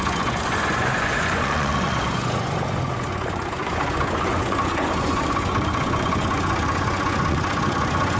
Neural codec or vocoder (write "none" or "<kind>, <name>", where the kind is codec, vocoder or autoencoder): vocoder, Vocos